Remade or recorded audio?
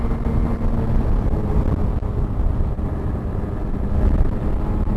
recorded